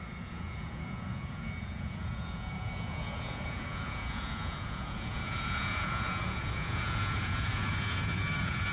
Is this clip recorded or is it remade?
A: remade